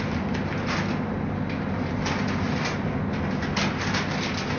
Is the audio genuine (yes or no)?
yes